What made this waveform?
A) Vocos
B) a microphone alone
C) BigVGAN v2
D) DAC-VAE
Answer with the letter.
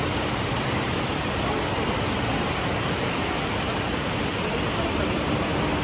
C